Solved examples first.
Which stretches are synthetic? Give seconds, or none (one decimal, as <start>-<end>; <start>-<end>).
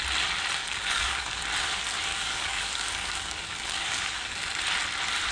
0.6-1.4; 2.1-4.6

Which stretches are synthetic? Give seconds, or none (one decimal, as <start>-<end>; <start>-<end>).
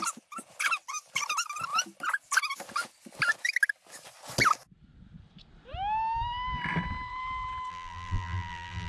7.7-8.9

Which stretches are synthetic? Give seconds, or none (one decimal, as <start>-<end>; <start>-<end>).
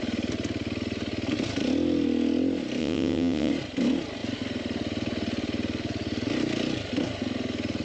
2.8-3.5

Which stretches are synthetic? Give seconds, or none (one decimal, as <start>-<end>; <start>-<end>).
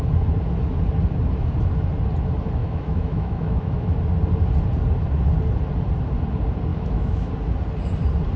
2.6-4.0; 6.7-7.3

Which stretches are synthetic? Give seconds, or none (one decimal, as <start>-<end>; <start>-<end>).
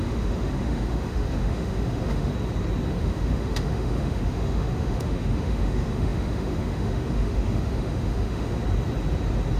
0.0-2.3; 2.9-8.6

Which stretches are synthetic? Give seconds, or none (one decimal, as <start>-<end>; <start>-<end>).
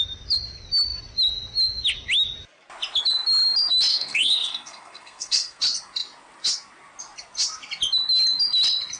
3.9-5.6